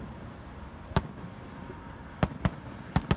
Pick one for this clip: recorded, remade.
recorded